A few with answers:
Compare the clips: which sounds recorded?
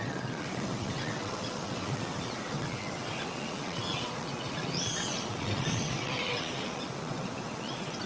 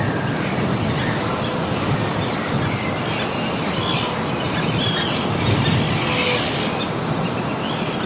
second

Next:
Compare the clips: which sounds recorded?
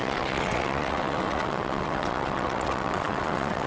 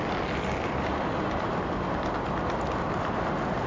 second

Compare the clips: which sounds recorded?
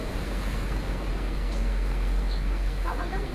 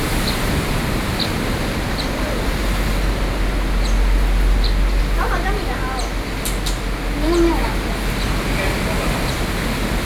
second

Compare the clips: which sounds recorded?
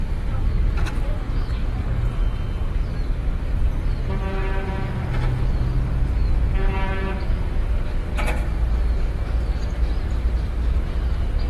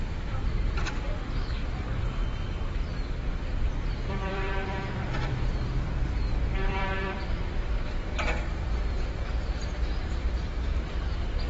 first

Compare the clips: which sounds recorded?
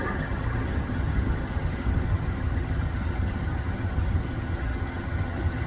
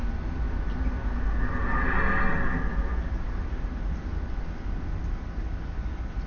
second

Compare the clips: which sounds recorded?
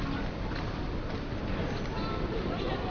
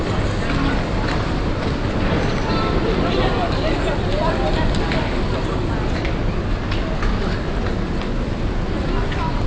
second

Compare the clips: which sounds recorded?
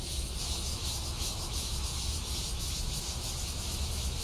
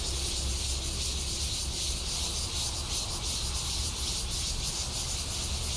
second